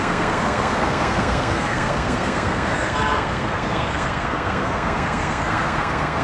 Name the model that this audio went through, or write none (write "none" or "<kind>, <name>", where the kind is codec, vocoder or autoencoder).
codec, SNAC